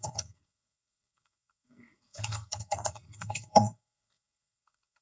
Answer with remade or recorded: remade